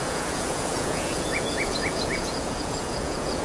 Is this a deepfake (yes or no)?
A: yes